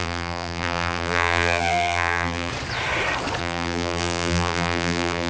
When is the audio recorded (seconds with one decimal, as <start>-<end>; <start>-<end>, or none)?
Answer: 2.5-3.4